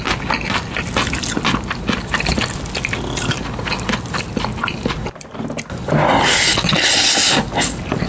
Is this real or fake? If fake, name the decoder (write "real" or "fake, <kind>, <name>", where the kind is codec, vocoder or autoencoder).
real